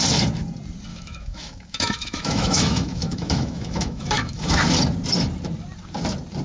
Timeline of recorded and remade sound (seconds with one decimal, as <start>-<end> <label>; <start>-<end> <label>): 0.0-0.9 recorded; 0.9-4.7 remade; 4.7-6.4 recorded